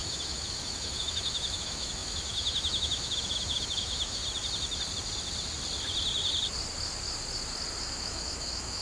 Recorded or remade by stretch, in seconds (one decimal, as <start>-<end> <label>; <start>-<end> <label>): 0.0-4.2 remade; 4.2-7.8 recorded; 7.8-8.8 remade